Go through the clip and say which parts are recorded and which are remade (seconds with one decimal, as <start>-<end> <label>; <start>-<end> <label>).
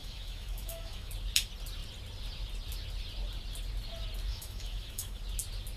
0.0-1.1 remade; 1.1-4.3 recorded; 4.3-5.2 remade; 5.2-5.8 recorded